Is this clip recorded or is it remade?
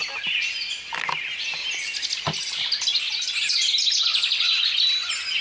recorded